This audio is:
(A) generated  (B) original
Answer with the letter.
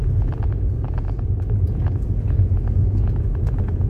A